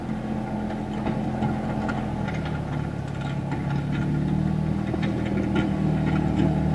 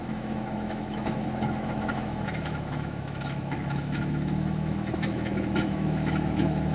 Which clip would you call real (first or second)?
first